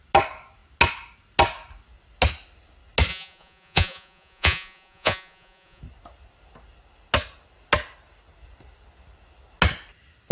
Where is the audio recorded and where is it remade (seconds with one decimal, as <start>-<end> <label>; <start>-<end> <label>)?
0.0-3.1 recorded; 3.1-5.8 remade; 5.8-10.3 recorded